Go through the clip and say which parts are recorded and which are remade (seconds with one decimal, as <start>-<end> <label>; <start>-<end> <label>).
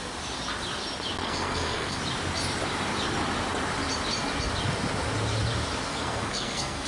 0.0-1.2 recorded; 1.2-2.0 remade; 2.0-5.9 recorded; 5.9-6.9 remade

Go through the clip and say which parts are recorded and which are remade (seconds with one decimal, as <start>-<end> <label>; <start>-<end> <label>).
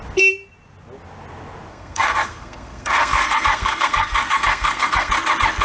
0.0-1.7 recorded; 1.7-5.1 remade; 5.1-5.6 recorded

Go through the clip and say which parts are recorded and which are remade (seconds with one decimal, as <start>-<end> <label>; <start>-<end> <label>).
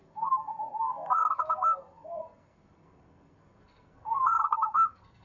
0.0-5.2 remade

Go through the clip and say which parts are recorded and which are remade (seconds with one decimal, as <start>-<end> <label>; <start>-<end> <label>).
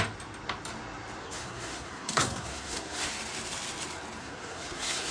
0.0-1.2 recorded; 1.2-3.1 remade; 3.1-4.2 recorded; 4.2-5.1 remade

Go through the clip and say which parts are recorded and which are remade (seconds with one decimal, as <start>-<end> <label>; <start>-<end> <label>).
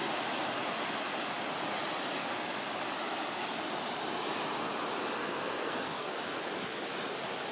0.0-5.2 recorded; 5.2-6.1 remade; 6.1-7.5 recorded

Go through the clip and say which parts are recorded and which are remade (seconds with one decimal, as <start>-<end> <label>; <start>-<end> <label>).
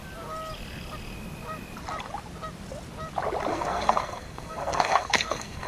0.0-3.5 recorded; 3.5-5.7 remade